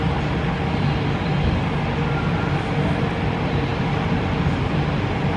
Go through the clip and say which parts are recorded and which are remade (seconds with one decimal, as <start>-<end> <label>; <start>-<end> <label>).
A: 0.0-5.4 recorded